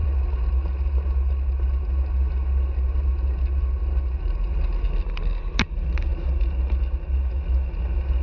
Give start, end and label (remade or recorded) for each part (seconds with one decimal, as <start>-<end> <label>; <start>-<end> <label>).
0.0-8.2 recorded